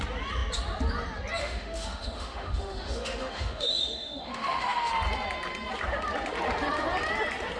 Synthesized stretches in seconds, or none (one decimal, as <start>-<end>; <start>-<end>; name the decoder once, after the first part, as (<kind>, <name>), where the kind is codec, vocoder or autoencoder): 1.4-4.9 (autoencoder, DAC-VAE)